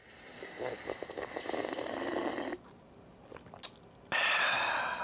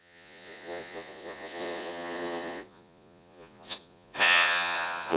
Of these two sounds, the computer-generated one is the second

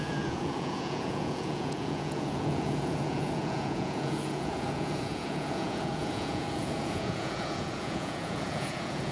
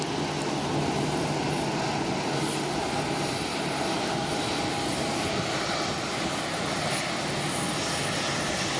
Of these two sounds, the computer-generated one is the first